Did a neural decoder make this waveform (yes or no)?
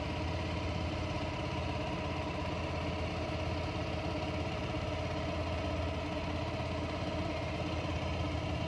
no